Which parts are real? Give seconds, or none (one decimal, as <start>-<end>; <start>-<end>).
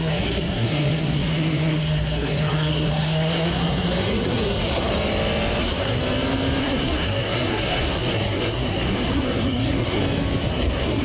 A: 4.9-5.6; 6.0-6.6; 10.0-10.5